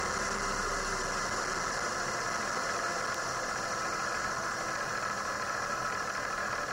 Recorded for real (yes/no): yes